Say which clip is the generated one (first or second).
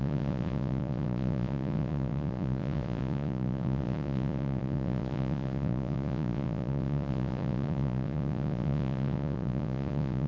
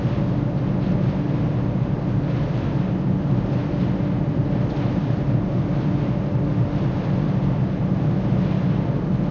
first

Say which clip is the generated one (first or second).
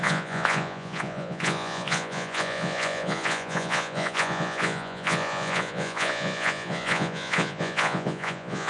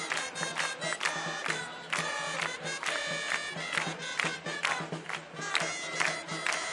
first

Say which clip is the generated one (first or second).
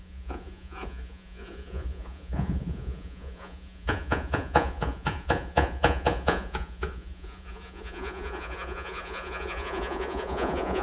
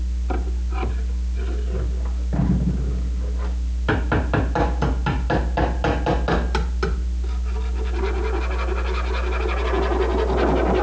first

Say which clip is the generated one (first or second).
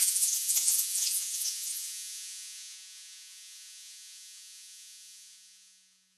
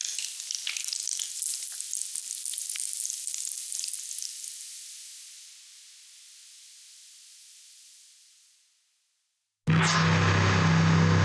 first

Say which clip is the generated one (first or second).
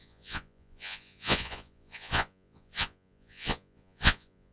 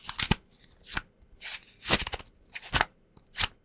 first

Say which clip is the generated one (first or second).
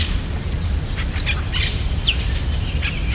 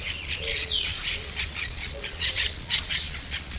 second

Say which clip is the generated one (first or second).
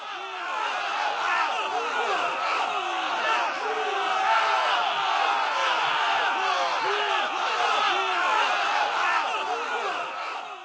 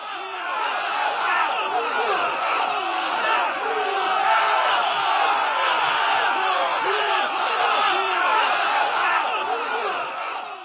second